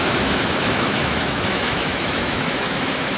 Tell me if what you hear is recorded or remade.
remade